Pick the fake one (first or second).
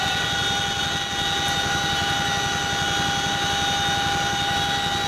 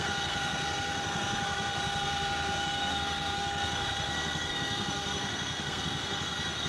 second